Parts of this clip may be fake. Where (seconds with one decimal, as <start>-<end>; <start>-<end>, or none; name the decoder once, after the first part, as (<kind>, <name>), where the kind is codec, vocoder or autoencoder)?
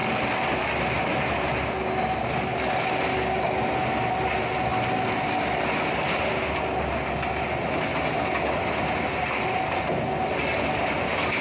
none